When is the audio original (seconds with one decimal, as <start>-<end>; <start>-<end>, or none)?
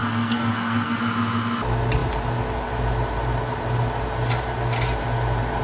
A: 1.0-5.6